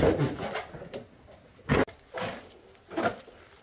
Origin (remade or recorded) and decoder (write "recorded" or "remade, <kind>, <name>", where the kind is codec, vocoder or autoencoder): recorded